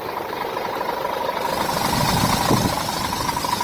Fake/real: real